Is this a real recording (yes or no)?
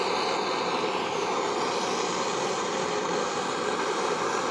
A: yes